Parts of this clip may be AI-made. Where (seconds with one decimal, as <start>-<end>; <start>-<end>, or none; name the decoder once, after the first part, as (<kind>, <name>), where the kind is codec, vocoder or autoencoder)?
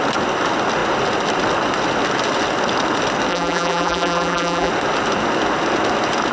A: 3.3-4.7 (vocoder, BigVGAN v2)